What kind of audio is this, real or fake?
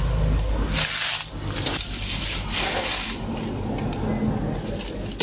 real